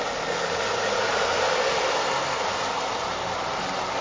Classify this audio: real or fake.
real